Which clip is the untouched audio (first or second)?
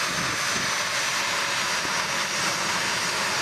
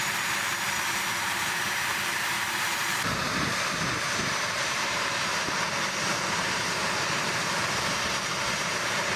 first